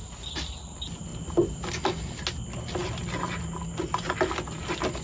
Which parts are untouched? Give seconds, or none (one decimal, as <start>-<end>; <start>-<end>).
0.0-5.0